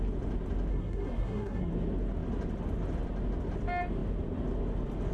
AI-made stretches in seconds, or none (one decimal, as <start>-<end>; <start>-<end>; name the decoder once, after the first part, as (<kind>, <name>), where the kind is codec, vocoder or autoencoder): 0.7-1.7 (codec, SNAC)